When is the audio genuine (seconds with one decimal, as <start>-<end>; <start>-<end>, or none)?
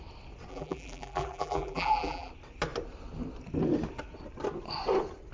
0.0-0.5; 2.3-5.3